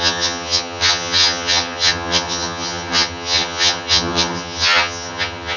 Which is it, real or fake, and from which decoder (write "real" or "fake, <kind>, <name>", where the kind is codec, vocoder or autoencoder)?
fake, vocoder, HiFi-GAN